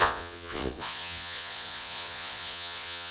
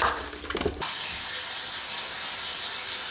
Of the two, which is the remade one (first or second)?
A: first